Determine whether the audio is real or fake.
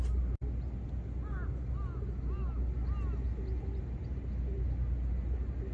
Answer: real